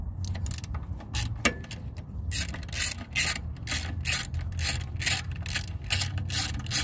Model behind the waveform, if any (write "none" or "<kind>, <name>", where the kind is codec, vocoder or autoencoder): none